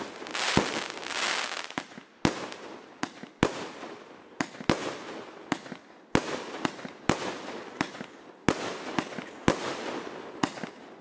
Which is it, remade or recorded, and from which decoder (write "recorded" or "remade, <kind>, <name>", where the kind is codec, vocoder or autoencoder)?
recorded